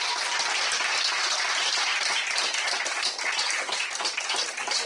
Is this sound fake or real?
real